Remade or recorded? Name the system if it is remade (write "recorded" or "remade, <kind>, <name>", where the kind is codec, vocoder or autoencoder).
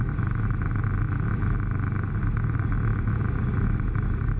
recorded